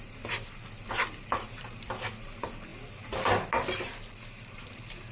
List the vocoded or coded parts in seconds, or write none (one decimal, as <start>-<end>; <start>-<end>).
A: none